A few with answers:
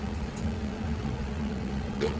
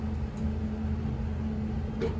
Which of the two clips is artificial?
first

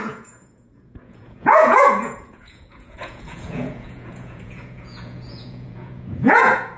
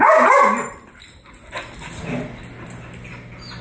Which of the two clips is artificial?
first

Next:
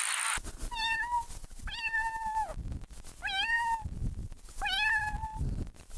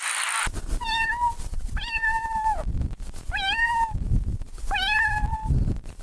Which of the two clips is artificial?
second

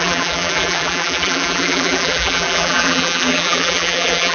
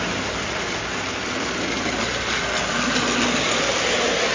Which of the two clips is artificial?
first